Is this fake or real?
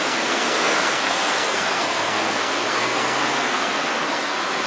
fake